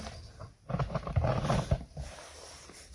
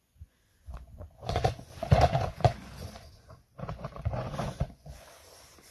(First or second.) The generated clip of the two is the second